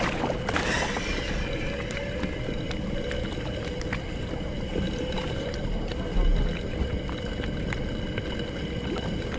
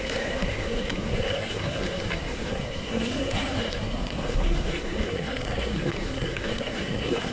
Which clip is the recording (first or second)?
first